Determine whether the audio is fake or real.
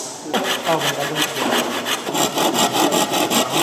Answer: real